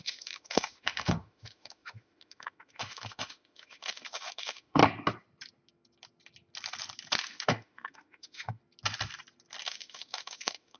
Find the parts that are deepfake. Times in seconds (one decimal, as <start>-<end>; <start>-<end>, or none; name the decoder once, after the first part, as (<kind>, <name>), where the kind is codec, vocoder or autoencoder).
0.0-4.8 (autoencoder, DAC-VAE); 7.2-8.6; 9.6-10.8